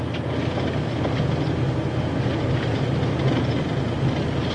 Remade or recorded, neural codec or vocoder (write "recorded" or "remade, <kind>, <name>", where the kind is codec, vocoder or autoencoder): recorded